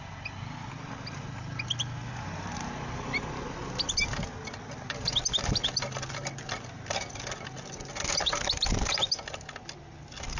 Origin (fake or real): real